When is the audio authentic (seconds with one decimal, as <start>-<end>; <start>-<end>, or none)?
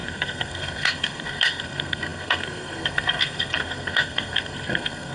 none